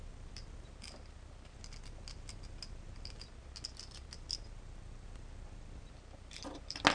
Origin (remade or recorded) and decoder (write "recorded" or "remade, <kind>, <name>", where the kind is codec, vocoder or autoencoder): recorded